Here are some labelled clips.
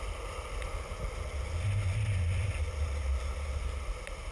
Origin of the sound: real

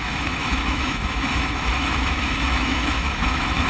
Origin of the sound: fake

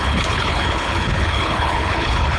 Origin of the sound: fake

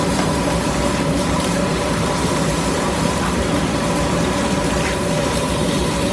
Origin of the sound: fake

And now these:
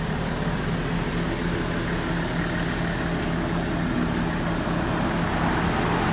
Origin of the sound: real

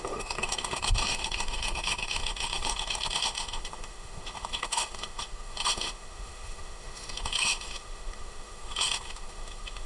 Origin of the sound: fake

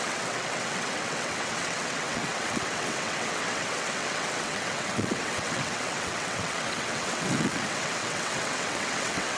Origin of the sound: fake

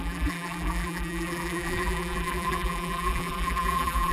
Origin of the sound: fake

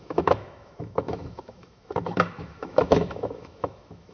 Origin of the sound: fake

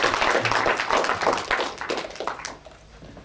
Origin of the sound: real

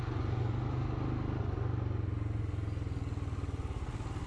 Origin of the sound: real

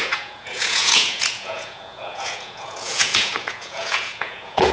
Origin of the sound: fake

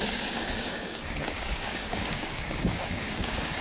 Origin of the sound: fake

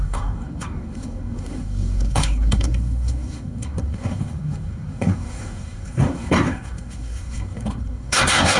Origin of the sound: fake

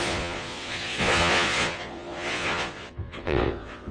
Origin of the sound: fake